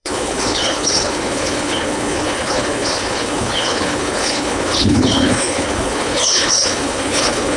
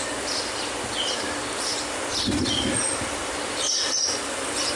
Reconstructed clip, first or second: first